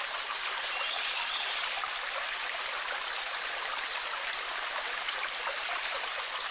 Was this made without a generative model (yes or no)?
yes